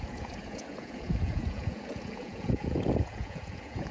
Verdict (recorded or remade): remade